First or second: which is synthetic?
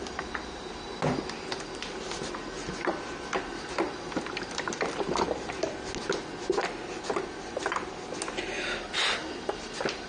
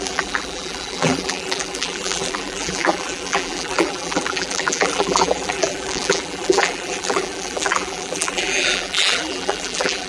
second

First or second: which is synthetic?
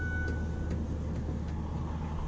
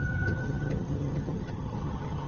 second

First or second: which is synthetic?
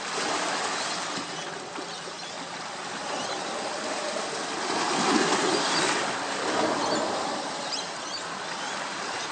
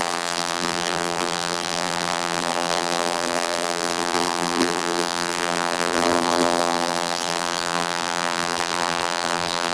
second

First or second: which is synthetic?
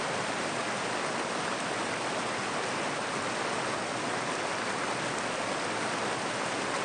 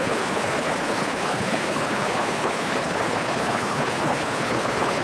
second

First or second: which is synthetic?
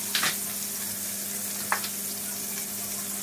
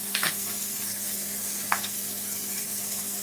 second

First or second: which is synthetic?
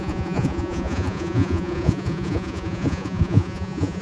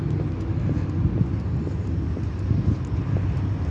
first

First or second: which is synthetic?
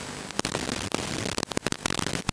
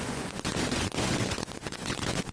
second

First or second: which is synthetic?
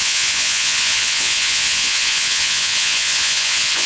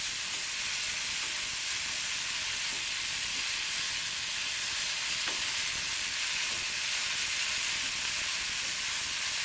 first